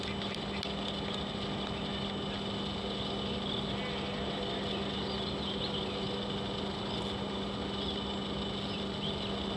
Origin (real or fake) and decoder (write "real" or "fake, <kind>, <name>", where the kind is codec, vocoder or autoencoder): real